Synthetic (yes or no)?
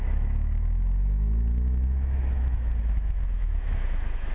yes